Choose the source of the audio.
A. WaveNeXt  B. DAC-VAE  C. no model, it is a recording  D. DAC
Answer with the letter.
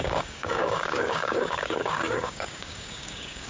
D